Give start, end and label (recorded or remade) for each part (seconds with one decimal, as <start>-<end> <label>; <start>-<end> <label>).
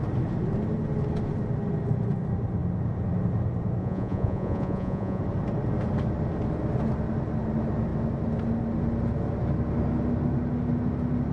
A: 0.0-3.8 recorded; 3.8-5.2 remade; 5.2-11.3 recorded